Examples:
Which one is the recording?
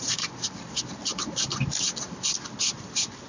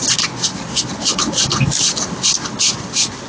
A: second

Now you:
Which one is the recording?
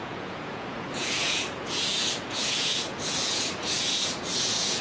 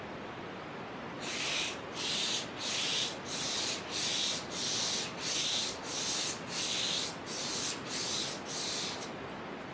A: second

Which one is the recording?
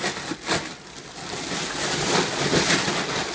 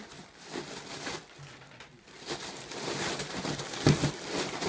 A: first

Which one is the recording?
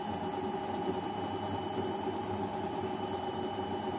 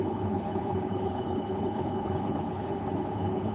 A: first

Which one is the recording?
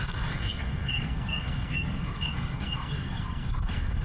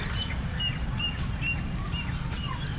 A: second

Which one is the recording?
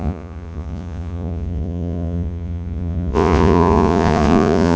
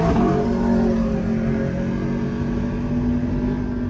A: second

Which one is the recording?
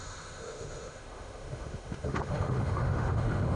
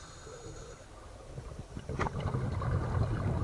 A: second